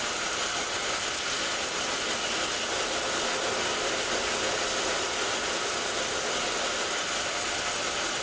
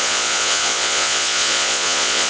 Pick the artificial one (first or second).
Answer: second